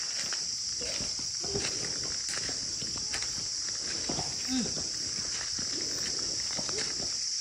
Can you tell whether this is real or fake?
real